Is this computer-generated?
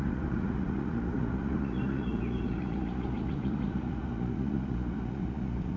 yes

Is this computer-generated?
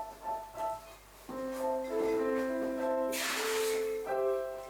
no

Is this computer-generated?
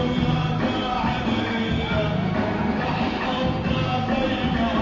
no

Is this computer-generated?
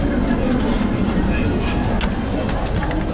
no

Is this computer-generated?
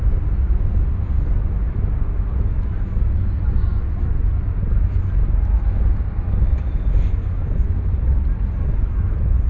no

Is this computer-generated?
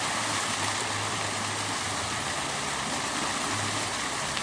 no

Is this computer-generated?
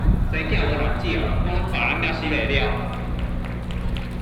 no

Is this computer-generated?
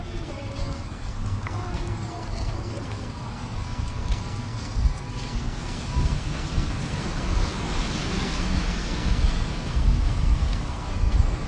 yes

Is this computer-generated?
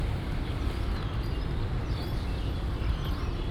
no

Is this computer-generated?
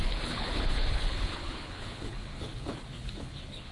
yes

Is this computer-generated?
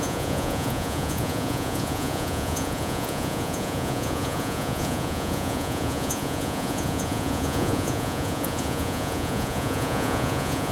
yes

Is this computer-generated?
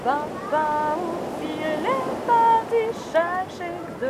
no